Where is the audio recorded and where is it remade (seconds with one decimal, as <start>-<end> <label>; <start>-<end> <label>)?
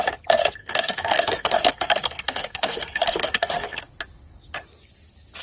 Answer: 0.0-0.6 recorded; 0.6-3.8 remade; 3.8-5.4 recorded